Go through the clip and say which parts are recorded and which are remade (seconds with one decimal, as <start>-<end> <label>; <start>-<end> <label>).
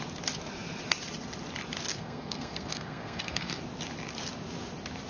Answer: 0.0-1.9 recorded; 1.9-3.6 remade; 3.6-5.1 recorded